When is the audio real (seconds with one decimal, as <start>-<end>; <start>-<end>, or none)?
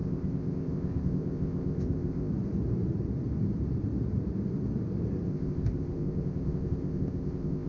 2.3-5.3